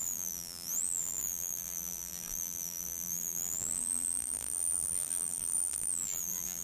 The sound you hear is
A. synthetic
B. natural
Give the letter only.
A